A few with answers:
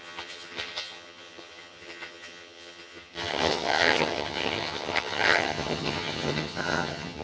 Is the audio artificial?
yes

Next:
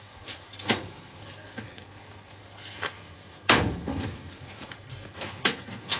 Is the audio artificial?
yes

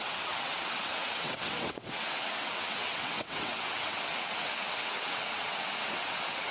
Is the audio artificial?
yes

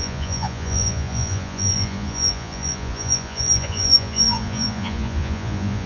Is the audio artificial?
yes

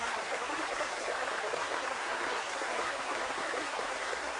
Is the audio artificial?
yes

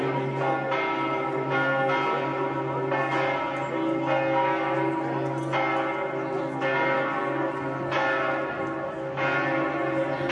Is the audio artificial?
no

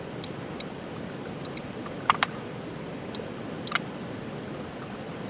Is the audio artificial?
no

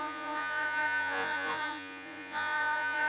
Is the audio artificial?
yes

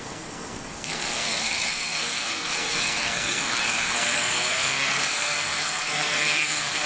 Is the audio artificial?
yes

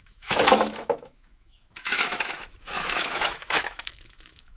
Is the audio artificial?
yes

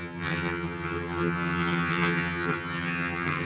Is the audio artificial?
yes